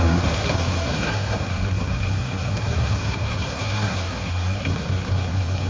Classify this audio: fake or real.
fake